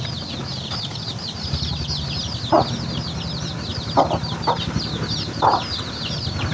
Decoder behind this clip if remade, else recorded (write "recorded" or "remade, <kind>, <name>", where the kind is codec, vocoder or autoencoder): recorded